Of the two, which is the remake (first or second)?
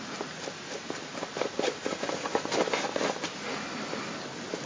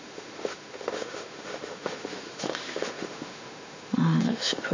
second